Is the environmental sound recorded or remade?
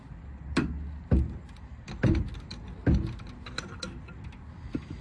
recorded